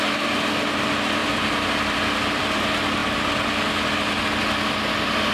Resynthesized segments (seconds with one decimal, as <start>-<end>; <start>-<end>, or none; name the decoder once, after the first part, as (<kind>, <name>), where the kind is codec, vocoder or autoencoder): none